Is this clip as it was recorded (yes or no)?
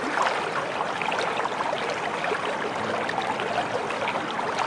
yes